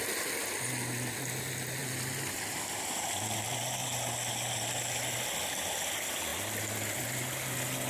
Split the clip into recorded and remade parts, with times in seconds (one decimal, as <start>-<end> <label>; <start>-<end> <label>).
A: 0.0-1.8 recorded; 1.8-3.1 remade; 3.1-7.9 recorded